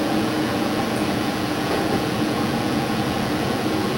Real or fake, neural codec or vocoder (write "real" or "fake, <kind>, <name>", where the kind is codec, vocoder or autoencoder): fake, vocoder, Vocos